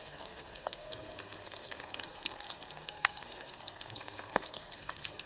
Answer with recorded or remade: remade